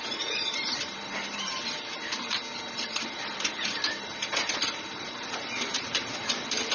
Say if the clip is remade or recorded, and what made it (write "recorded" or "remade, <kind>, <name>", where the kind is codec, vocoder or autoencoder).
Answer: remade, vocoder, BigVGAN v2